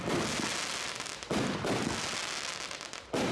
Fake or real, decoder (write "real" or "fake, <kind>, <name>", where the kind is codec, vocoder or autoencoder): real